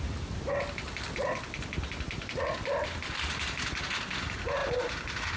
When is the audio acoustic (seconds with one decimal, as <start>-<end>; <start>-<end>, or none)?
0.0-5.4